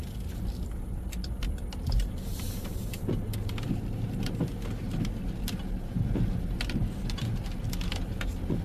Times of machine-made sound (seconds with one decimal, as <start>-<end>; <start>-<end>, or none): 2.3-2.8